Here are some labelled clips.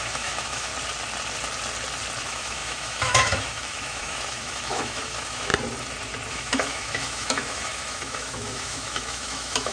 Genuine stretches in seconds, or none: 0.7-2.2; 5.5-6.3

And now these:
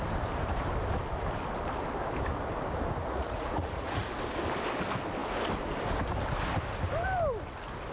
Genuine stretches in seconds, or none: 0.0-3.0; 4.1-7.9

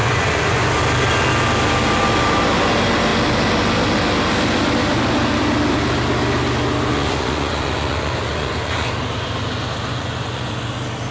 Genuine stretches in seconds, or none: 0.7-6.9; 8.9-9.9; 10.7-11.1

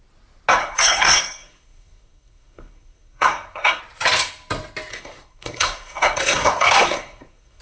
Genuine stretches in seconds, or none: 0.0-0.6; 3.8-4.9

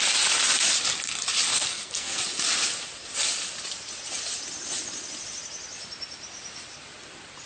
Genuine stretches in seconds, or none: 0.0-1.5; 2.2-7.5